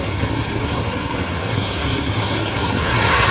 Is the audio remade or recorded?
remade